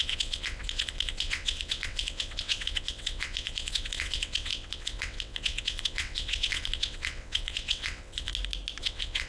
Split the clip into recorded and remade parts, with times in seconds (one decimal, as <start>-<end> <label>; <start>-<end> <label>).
0.0-8.3 remade; 8.3-8.8 recorded; 8.8-9.3 remade